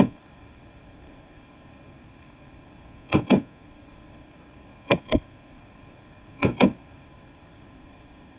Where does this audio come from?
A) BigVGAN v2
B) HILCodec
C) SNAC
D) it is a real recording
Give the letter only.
C